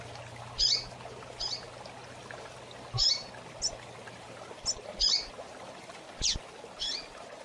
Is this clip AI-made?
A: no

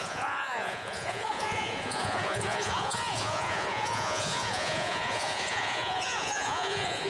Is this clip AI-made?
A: yes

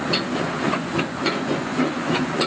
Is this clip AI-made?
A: yes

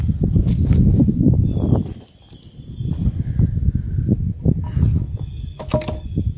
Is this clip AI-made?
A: no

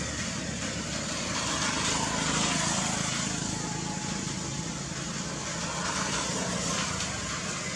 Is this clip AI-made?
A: no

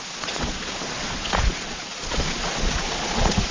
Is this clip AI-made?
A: yes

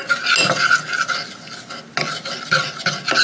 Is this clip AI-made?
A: no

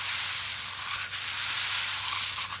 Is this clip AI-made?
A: no